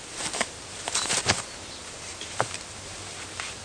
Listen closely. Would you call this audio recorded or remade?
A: remade